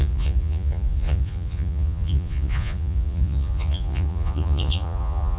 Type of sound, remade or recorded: remade